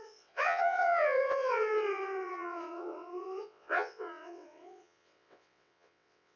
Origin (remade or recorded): remade